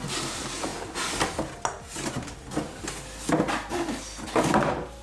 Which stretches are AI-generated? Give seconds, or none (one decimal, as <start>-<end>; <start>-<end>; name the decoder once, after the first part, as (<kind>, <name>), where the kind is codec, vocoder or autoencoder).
none